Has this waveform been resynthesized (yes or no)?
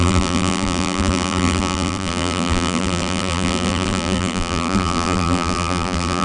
yes